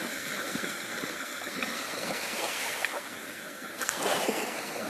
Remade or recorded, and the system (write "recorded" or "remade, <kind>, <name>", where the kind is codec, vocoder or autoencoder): remade, codec, SNAC